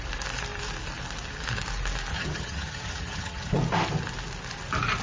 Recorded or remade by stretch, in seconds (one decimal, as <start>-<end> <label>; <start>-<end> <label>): 0.0-2.1 recorded; 2.1-3.6 remade; 3.6-5.0 recorded